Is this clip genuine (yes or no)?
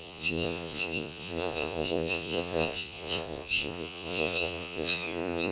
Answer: no